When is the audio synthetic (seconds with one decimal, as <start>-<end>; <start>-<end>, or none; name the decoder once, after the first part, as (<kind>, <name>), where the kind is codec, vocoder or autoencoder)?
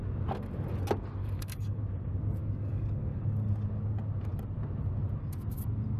1.2-1.8 (codec, DAC); 2.4-3.2